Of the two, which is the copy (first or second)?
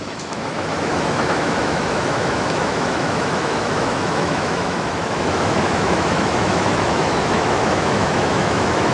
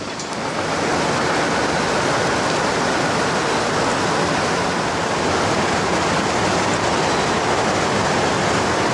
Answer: first